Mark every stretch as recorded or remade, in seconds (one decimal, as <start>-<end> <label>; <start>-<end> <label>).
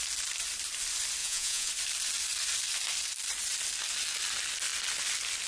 0.0-1.2 recorded; 1.2-1.7 remade; 1.7-5.5 recorded